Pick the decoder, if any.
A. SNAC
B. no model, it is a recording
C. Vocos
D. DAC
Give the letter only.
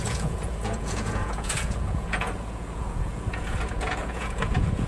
C